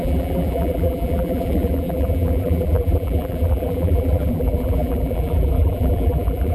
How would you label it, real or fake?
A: fake